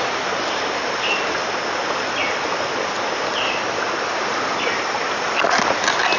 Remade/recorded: recorded